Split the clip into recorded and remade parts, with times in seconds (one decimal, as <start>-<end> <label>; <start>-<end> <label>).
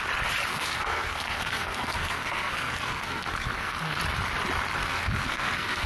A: 0.0-0.5 recorded; 0.5-4.0 remade; 4.0-4.8 recorded; 4.8-5.9 remade